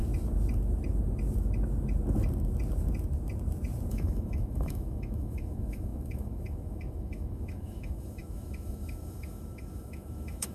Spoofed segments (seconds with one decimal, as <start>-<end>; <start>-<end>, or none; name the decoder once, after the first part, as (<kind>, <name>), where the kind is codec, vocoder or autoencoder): 3.9-10.5 (autoencoder, DAC-VAE)